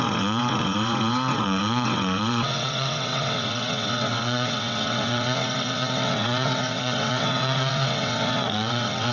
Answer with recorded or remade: remade